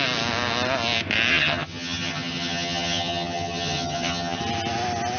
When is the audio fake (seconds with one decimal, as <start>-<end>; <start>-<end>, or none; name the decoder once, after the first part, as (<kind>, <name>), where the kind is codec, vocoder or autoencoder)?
1.3-4.4 (vocoder, HiFi-GAN)